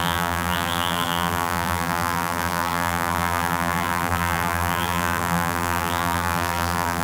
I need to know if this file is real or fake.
fake